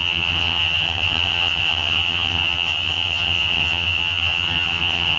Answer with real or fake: fake